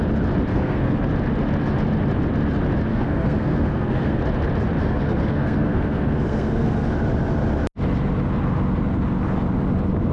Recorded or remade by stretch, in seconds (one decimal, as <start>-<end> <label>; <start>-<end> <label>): 0.0-0.5 recorded; 0.5-1.0 remade; 1.0-2.9 recorded; 2.9-4.2 remade; 4.2-4.8 recorded; 4.8-6.9 remade; 6.9-10.1 recorded